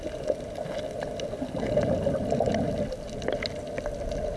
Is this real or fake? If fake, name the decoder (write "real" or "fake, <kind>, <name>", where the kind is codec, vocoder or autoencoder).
real